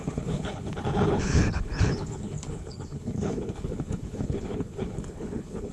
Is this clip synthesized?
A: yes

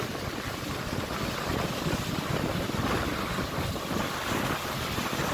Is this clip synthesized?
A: no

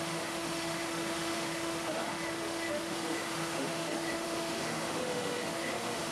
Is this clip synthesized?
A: yes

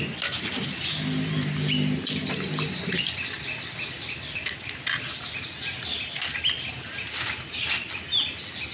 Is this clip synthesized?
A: no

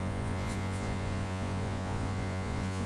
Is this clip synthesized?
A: yes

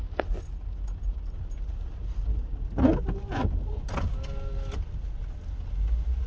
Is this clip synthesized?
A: no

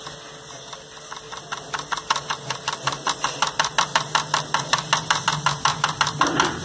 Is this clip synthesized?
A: no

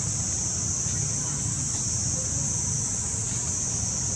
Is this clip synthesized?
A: no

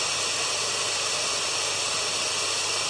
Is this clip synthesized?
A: no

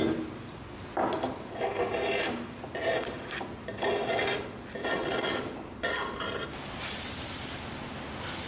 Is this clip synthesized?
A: no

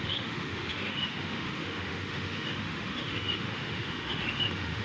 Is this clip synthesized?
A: yes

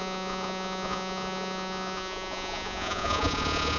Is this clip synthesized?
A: yes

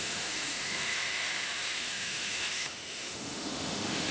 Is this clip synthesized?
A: yes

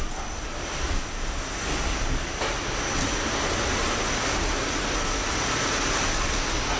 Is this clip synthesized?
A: no